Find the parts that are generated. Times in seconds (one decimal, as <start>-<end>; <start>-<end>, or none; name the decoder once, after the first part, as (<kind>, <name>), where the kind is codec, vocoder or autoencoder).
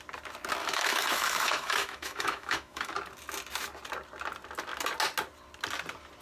0.6-2.9 (autoencoder, DAC-VAE)